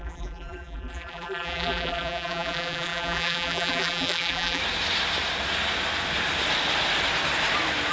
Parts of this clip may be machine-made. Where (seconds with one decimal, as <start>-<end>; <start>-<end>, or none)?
0.0-4.6